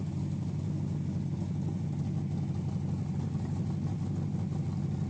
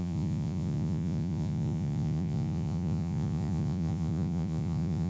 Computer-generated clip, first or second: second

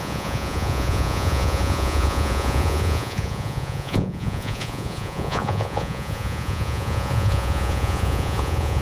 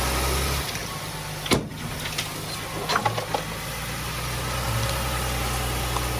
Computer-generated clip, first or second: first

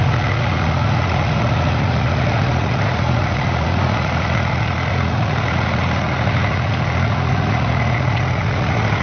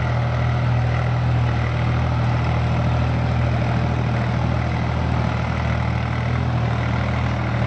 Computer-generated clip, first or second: first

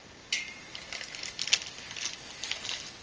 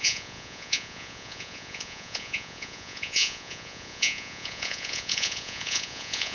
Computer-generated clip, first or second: second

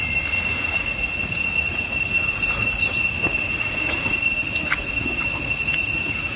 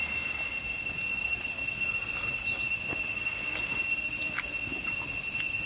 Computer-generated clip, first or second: first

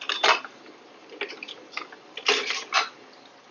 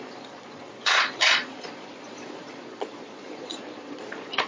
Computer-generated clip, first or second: second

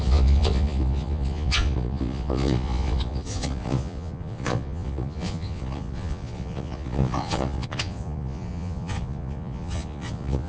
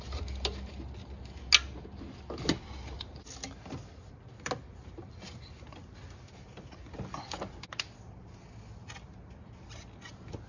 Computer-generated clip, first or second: first